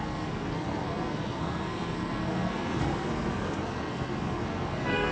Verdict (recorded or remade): remade